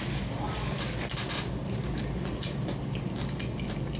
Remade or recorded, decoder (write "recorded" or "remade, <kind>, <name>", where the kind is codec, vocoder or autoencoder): recorded